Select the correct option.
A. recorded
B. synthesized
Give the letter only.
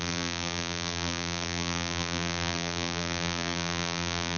B